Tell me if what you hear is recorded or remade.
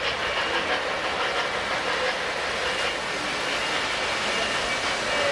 recorded